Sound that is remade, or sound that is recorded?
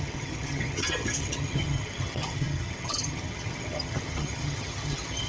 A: remade